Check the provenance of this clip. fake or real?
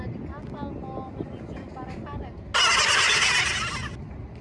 real